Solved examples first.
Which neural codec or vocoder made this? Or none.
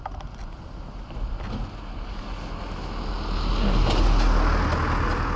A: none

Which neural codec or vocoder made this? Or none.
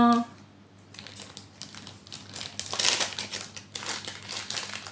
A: none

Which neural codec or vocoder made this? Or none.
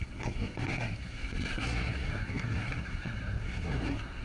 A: codec, SNAC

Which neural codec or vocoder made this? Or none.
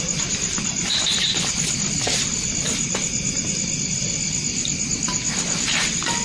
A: none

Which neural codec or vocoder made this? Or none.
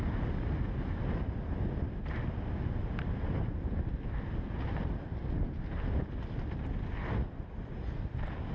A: none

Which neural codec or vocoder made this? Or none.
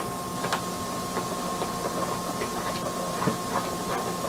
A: none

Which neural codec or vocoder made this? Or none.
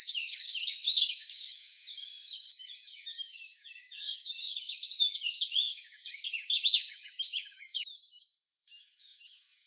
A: autoencoder, DAC-VAE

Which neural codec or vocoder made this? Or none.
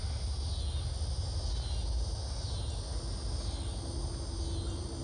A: none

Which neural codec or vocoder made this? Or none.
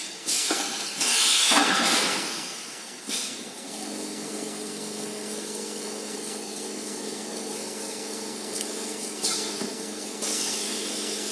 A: codec, SNAC